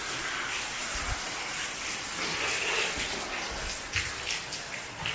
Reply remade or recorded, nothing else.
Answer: recorded